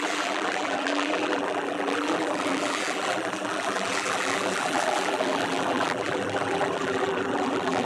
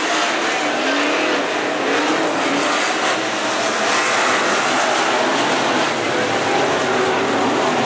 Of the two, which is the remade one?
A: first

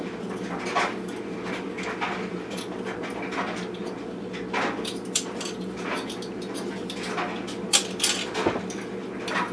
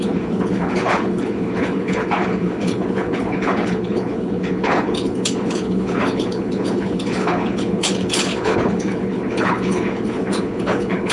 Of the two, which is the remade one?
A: second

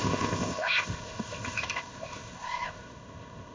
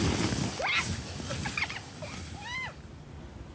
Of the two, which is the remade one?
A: first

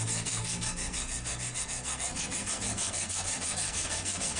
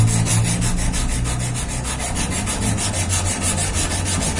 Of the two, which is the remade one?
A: first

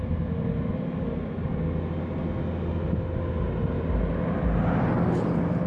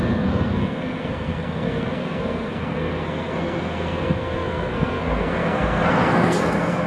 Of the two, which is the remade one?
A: second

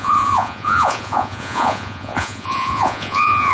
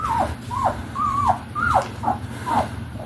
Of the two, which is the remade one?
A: first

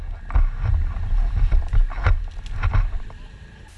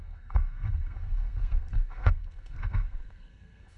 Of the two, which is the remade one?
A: second